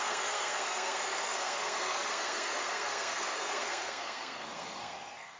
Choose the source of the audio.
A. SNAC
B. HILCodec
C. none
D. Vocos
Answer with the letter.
A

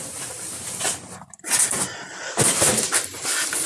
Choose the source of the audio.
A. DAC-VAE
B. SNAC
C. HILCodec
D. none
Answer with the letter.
D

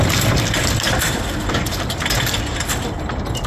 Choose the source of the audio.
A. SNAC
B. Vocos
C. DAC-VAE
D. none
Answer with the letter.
D